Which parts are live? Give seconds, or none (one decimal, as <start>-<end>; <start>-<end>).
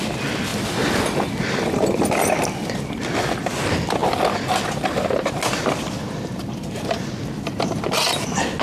0.0-8.6